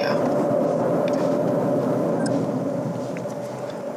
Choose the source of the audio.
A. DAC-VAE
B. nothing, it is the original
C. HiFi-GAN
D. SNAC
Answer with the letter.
B